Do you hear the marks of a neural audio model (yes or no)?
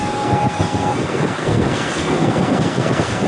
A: yes